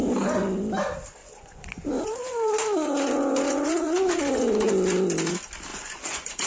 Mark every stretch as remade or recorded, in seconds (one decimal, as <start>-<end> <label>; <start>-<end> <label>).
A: 0.0-1.2 recorded; 1.2-4.7 remade; 4.7-5.7 recorded; 5.7-6.5 remade